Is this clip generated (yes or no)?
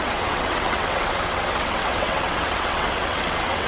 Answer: yes